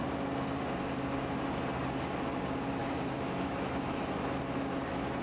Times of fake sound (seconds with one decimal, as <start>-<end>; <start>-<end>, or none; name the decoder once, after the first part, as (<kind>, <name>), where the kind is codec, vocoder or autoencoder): 2.8-4.4 (autoencoder, DAC-VAE)